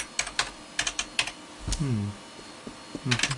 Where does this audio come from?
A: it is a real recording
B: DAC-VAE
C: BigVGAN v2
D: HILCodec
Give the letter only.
A